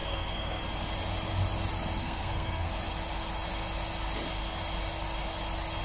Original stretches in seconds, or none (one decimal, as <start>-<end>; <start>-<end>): 0.6-2.0; 2.7-5.8